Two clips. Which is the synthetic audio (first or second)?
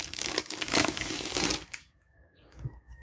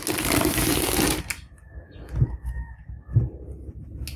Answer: first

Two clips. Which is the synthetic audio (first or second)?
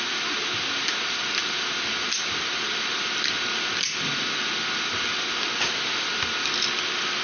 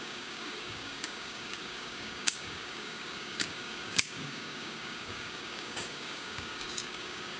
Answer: second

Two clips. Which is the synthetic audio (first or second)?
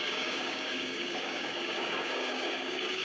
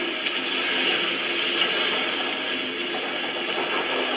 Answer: first